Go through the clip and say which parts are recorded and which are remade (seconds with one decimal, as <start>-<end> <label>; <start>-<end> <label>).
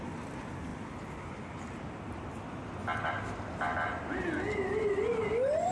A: 0.0-5.7 recorded